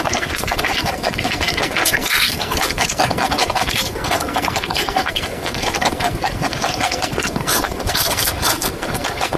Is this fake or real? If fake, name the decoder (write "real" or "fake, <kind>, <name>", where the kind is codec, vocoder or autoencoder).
fake, codec, SNAC